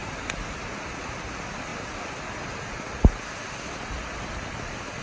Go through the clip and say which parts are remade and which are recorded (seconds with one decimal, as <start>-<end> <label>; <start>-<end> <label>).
0.0-5.0 recorded